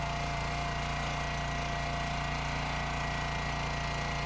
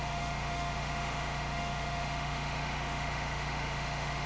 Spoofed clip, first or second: second